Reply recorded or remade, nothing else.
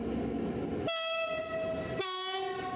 recorded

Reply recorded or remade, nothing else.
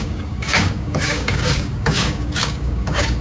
remade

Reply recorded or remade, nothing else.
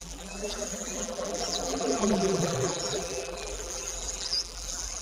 remade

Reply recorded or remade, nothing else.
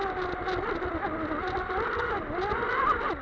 recorded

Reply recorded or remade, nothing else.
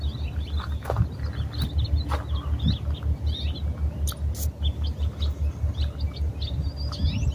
recorded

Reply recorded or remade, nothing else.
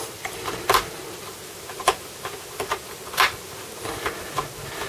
recorded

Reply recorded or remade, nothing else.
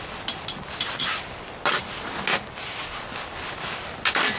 recorded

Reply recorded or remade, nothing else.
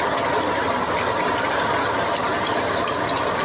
recorded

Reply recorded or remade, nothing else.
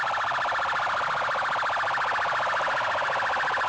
recorded